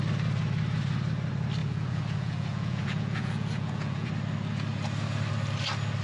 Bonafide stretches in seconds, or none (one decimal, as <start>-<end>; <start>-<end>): 0.0-1.6; 4.1-6.0